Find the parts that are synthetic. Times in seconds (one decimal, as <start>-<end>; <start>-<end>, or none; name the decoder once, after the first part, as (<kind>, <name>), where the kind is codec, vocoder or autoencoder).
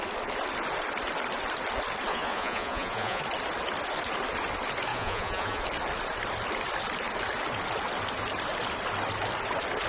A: 2.1-3.2 (vocoder, Vocos); 4.9-5.6